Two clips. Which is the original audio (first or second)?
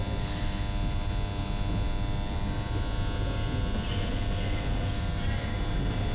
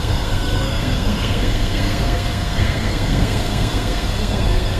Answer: first